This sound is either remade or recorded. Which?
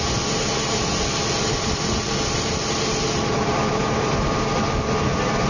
recorded